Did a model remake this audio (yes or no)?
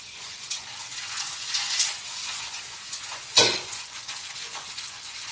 yes